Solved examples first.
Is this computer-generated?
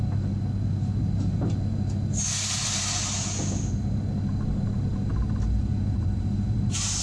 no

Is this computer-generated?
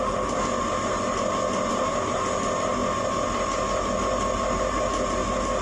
no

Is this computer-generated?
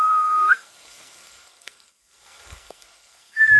yes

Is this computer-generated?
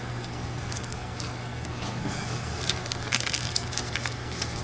yes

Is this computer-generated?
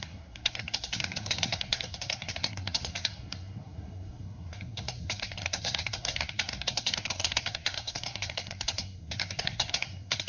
yes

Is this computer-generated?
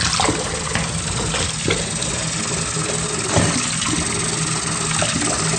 no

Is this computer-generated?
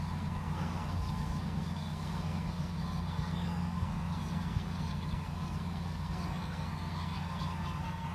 yes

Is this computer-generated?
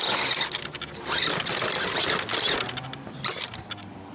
no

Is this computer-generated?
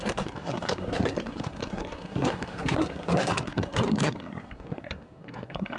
yes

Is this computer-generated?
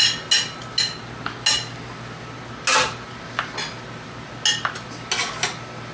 no